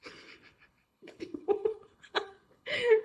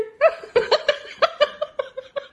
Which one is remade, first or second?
first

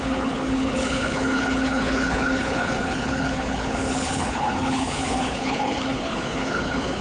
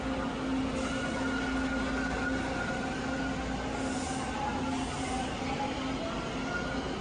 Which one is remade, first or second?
first